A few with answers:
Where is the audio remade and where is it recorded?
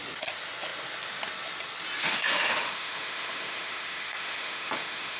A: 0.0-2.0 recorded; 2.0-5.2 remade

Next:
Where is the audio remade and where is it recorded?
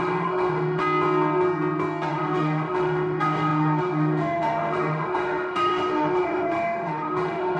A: 0.0-0.8 remade; 0.8-2.1 recorded; 2.1-7.6 remade